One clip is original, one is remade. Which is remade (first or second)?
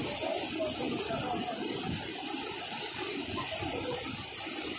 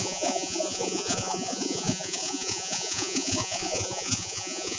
second